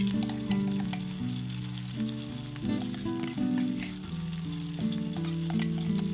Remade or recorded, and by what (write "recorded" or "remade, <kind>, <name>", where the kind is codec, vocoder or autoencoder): recorded